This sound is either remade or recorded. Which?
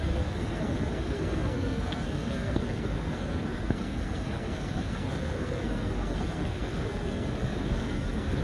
remade